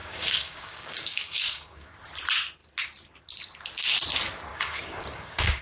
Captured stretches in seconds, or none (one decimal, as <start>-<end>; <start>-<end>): 1.9-4.5